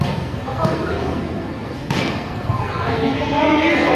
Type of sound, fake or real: fake